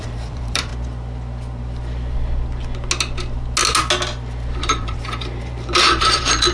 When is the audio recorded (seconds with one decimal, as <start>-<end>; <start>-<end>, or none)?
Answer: 0.7-4.6